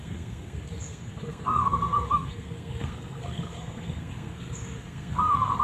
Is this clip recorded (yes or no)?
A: no